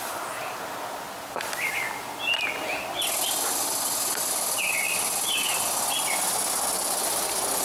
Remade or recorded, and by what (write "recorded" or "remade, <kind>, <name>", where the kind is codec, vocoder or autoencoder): recorded